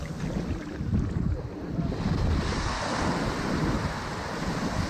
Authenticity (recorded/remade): recorded